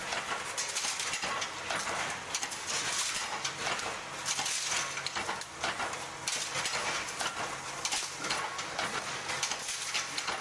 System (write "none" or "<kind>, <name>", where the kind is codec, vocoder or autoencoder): none